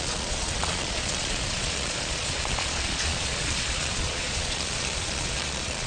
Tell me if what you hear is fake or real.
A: fake